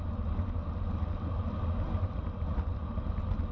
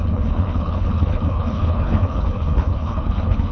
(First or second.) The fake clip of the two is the second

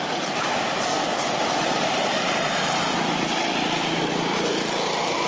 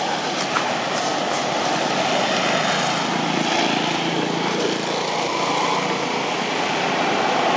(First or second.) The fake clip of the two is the first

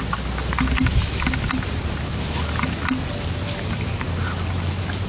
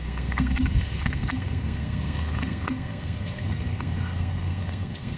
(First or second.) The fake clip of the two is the second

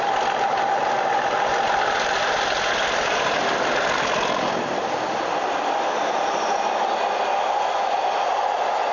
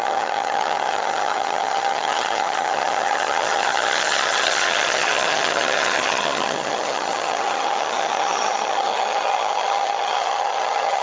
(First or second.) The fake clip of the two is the second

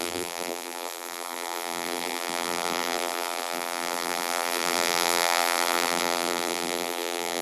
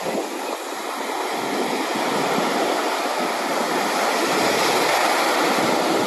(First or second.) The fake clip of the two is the first